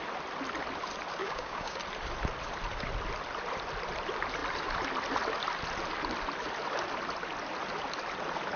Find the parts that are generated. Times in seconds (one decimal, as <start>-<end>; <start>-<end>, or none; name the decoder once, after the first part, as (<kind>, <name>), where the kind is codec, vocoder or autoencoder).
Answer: 1.2-1.8 (codec, DAC)

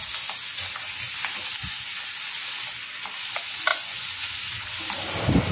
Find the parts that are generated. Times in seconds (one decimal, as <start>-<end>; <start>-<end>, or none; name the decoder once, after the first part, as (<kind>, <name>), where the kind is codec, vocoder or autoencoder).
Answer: 3.7-4.3 (vocoder, Vocos)

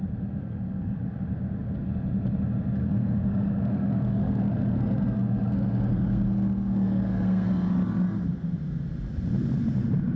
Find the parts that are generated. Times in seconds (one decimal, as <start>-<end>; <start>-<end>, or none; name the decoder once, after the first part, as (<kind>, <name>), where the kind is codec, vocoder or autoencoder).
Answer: 0.4-1.0 (codec, SNAC); 2.8-7.5